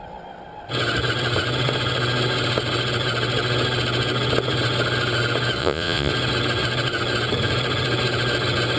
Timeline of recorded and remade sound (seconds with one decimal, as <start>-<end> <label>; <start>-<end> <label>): 0.0-5.6 recorded; 5.6-6.1 remade; 6.1-8.8 recorded